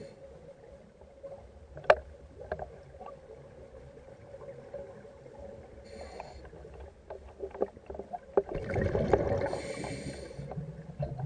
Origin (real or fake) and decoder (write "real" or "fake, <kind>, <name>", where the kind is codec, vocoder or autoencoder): real